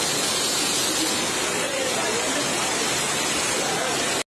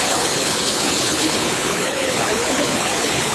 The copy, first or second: second